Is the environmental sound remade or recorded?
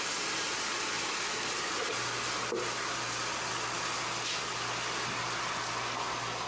recorded